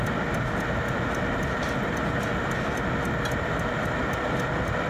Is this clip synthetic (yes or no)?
no